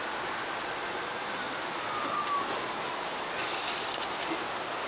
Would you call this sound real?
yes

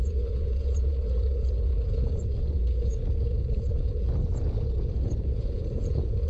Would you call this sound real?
no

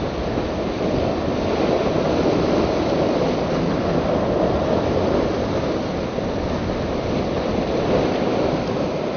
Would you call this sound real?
yes